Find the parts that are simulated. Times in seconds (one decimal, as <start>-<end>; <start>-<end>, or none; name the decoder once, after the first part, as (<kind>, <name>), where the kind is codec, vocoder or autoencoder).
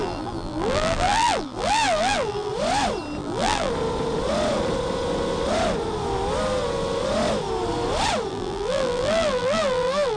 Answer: 0.0-2.5 (vocoder, BigVGAN v2); 3.2-3.7; 8.3-10.2